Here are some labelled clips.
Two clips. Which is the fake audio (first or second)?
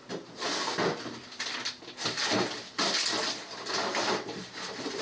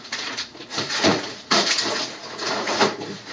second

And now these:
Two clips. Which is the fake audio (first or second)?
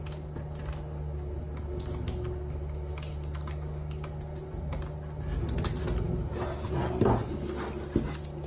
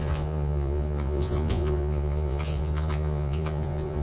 second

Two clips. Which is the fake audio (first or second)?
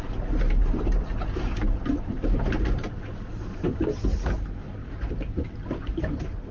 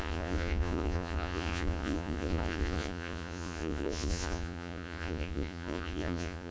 second